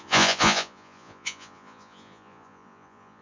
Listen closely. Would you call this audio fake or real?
fake